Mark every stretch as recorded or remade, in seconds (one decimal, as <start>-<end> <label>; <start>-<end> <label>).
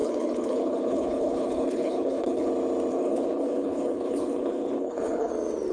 0.0-2.5 remade; 2.5-2.9 recorded; 2.9-5.3 remade; 5.3-5.7 recorded